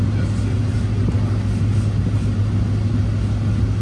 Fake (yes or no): no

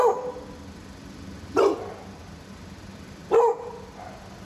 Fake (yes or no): no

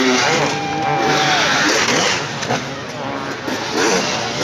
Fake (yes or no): no